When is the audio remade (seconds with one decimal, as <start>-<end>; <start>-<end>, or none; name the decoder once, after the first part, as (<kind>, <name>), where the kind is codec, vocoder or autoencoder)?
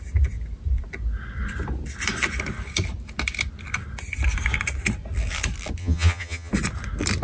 5.8-6.5 (vocoder, HiFi-GAN)